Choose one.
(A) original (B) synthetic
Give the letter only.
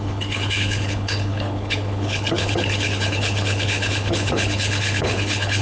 B